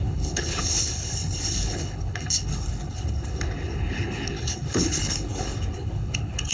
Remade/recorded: remade